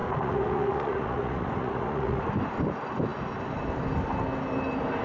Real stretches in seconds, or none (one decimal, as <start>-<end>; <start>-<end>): 2.2-5.0